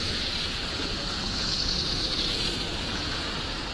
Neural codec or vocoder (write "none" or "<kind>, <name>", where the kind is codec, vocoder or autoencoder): vocoder, Vocos